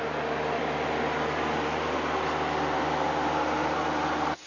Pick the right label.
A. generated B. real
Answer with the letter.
B